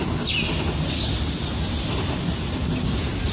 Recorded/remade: recorded